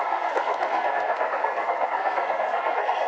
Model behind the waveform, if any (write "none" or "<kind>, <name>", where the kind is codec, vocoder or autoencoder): codec, SNAC